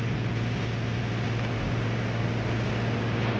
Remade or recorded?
recorded